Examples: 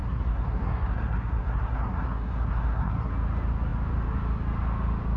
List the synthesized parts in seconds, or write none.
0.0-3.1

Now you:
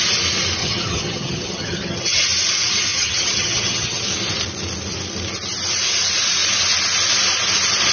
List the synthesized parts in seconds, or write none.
0.6-2.2; 2.9-4.0

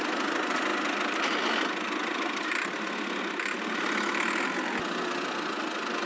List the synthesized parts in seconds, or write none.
none

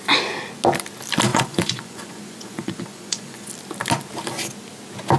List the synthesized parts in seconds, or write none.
1.3-3.5

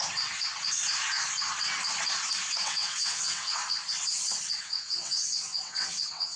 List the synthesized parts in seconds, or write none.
2.6-3.6; 4.6-6.4

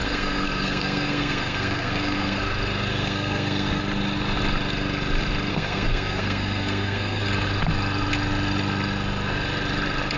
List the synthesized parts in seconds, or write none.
0.0-2.4; 2.9-3.8; 5.5-7.2

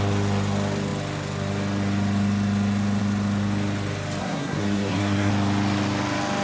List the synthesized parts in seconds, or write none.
4.2-5.3

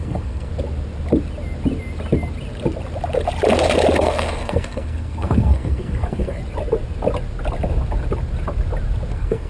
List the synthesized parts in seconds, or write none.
0.0-0.5; 4.0-6.4; 9.1-9.5